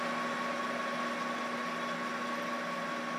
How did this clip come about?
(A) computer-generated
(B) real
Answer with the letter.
B